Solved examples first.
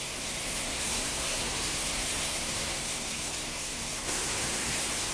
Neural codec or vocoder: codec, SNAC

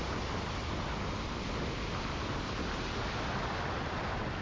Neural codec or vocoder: none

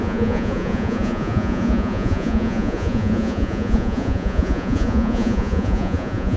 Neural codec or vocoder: vocoder, Vocos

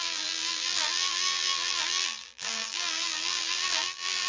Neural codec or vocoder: vocoder, BigVGAN v2